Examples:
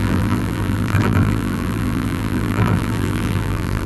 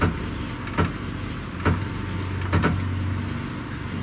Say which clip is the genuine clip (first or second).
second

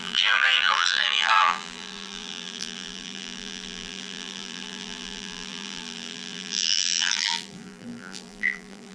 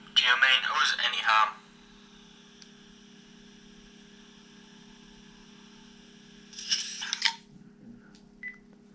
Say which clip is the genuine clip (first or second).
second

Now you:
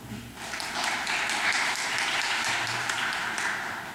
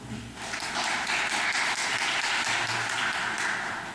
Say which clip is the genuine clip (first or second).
second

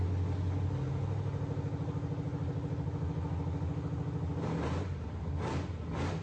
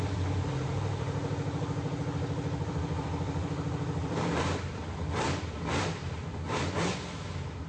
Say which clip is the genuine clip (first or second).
first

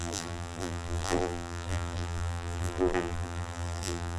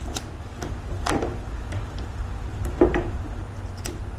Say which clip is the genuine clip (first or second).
second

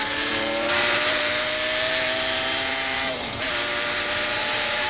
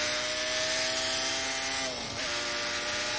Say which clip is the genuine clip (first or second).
second